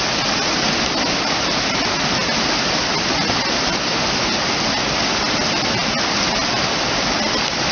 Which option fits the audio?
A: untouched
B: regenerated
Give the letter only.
A